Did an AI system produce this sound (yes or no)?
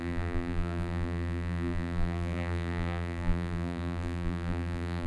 yes